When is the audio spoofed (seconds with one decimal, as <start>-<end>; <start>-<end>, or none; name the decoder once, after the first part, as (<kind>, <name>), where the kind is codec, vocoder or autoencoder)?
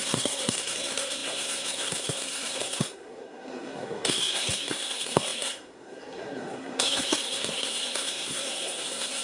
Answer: 0.0-9.2 (codec, SNAC)